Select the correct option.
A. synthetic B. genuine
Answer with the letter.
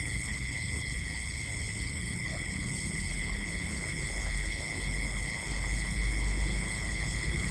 A